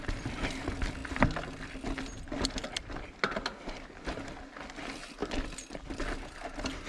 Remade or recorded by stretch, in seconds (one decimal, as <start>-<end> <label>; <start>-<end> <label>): 0.0-6.9 recorded